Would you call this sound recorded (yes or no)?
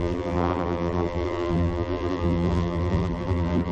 no